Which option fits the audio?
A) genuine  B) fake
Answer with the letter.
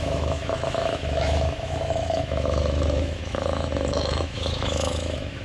B